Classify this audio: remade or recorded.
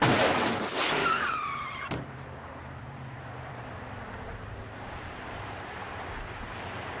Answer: remade